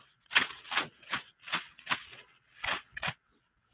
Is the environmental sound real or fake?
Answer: fake